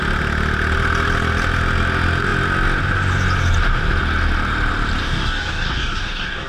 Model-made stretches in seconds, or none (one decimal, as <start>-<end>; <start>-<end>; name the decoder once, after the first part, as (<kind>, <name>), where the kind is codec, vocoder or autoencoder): 5.0-6.5 (codec, DAC)